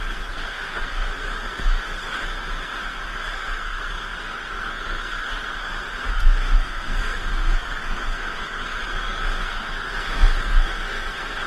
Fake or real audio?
fake